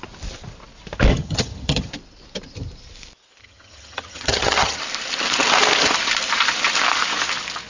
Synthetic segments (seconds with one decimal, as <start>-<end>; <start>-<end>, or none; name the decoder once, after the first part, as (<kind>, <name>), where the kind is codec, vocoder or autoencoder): 1.1-1.9 (vocoder, HiFi-GAN); 3.4-4.8